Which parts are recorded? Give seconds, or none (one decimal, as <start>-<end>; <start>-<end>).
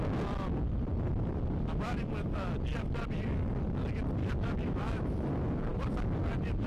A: 0.0-0.9; 2.1-4.2; 5.3-5.7; 6.3-6.7